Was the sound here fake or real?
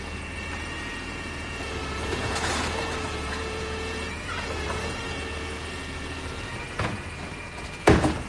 fake